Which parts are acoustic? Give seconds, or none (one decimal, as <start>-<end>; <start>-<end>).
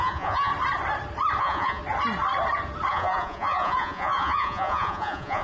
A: 0.5-1.4; 1.8-2.9